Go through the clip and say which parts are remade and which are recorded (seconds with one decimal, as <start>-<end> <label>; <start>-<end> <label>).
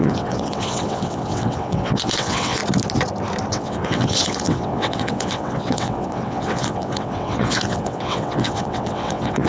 0.0-2.6 remade; 2.6-3.5 recorded; 3.5-9.5 remade